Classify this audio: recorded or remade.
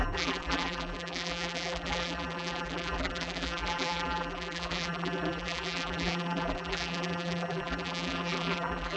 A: remade